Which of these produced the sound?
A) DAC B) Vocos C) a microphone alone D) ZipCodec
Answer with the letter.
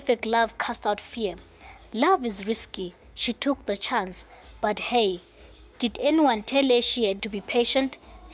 A